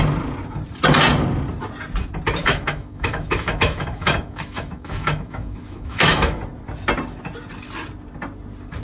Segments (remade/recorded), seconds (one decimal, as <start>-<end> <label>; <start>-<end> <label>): 0.0-2.4 recorded; 2.4-6.4 remade; 6.4-8.8 recorded